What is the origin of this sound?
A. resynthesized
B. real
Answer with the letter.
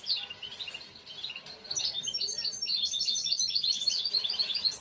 B